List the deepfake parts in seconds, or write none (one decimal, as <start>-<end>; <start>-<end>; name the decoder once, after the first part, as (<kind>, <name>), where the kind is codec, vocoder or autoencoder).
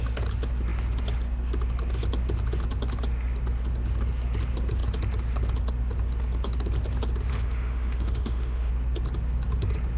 7.3-8.7 (autoencoder, DAC-VAE)